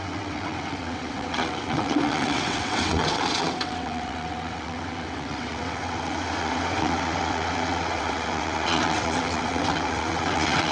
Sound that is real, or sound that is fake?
fake